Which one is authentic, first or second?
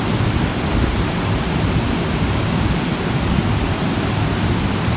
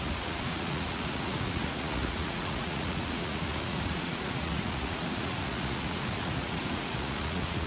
first